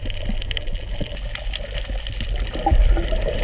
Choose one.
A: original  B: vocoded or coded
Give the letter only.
A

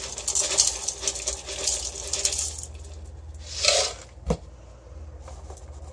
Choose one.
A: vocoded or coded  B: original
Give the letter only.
B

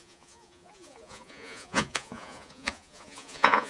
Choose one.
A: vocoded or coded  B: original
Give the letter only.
A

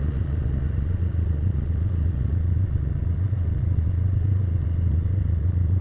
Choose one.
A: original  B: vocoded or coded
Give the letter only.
B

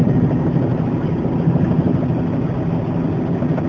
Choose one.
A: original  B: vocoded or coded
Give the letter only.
A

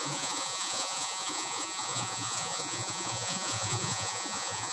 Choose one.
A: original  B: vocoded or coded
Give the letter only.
B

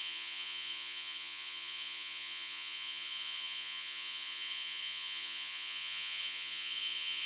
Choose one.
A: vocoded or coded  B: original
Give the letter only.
A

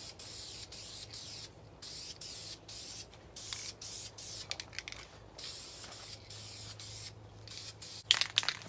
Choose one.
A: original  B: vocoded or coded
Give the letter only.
A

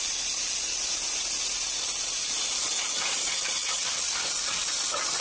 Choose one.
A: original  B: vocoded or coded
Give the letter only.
A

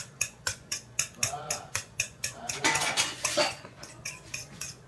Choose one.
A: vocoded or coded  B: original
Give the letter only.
A